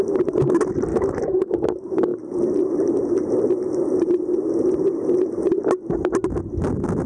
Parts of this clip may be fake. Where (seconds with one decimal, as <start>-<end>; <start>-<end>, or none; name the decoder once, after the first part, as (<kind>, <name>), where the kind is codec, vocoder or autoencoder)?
0.9-1.5 (autoencoder, DAC-VAE)

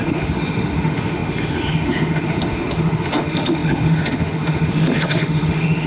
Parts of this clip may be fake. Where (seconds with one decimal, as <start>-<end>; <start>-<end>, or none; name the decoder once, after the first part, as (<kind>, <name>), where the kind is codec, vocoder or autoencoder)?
0.0-5.9 (autoencoder, DAC-VAE)

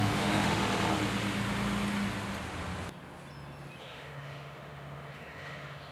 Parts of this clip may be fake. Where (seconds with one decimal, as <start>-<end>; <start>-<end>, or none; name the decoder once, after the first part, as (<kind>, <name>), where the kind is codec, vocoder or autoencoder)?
0.0-0.6 (autoencoder, DAC-VAE); 3.8-5.9

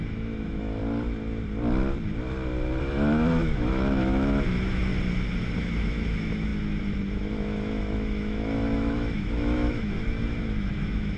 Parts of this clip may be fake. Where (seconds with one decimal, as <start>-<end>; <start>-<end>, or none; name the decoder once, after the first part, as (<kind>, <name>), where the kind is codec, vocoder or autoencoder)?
0.0-0.8 (autoencoder, DAC-VAE); 2.8-4.9; 5.6-11.2